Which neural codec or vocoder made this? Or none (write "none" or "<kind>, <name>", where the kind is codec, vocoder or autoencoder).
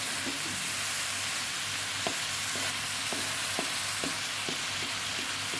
none